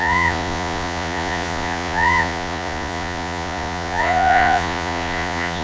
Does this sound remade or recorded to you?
remade